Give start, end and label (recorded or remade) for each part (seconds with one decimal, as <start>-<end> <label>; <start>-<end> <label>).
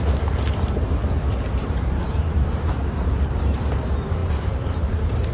0.0-1.6 recorded; 1.6-3.2 remade; 3.2-4.2 recorded; 4.2-5.3 remade